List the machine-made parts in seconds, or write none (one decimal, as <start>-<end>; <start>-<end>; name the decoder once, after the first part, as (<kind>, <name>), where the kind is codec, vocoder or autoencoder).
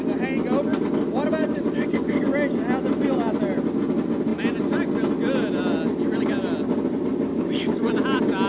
1.4-2.2 (codec, DAC); 7.3-7.9